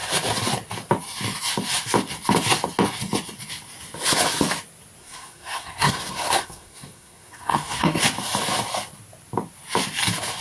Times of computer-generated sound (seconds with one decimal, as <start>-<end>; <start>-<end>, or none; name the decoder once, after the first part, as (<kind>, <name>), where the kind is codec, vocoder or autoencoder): 5.0-8.0 (codec, SNAC)